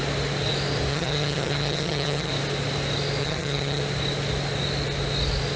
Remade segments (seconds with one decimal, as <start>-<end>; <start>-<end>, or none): 0.9-2.3; 3.2-3.8